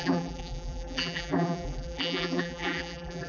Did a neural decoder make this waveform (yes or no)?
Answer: yes